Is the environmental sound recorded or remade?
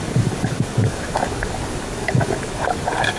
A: remade